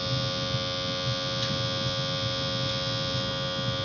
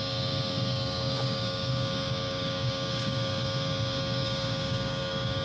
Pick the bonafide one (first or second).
first